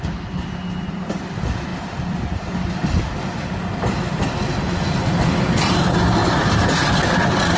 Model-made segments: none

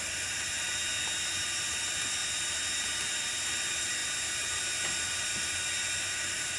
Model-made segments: none

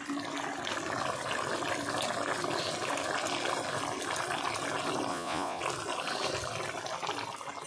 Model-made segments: 5.1-5.6 (vocoder, Vocos)

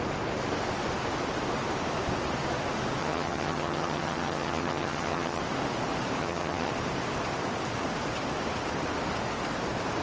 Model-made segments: 3.0-5.4 (vocoder, HiFi-GAN); 6.2-6.7

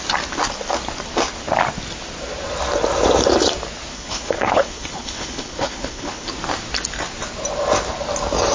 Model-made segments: 3.9-6.3 (codec, HILCodec)

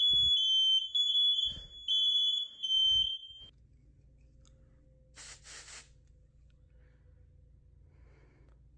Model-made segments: none

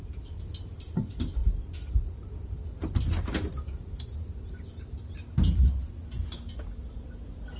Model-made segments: none

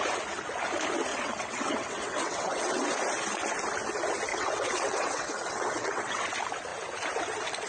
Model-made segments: 1.1-2.8 (vocoder, WaveNeXt); 4.3-6.3